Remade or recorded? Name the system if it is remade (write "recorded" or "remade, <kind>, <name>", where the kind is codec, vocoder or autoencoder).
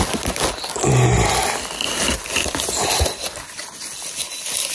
recorded